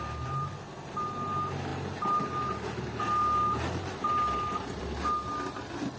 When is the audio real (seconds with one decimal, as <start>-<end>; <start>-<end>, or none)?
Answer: 0.0-6.0